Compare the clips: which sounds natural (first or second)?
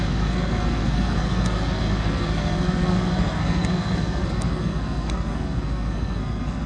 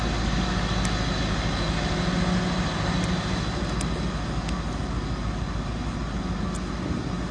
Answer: second